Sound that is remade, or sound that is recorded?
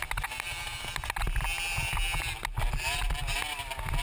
recorded